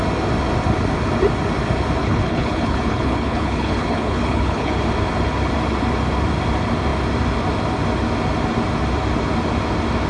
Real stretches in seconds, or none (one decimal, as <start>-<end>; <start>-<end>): 0.0-2.0; 4.7-10.1